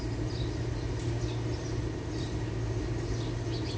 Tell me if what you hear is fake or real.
real